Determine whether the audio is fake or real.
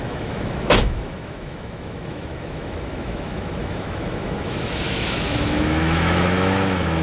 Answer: fake